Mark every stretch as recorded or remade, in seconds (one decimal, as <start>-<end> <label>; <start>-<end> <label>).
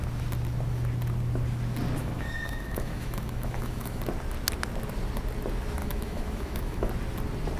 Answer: 0.0-2.0 recorded; 2.0-4.0 remade; 4.0-5.8 recorded; 5.8-6.9 remade; 6.9-7.6 recorded